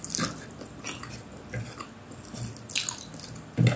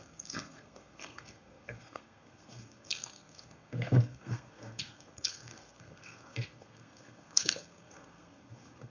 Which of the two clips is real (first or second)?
first